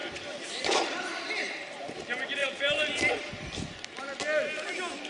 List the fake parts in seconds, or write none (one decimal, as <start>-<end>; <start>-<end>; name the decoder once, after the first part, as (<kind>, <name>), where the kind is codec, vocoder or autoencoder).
0.0-2.0 (vocoder, BigVGAN v2); 2.4-3.3